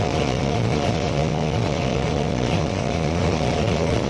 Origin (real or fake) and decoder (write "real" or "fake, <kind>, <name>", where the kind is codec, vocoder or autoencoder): fake, vocoder, Vocos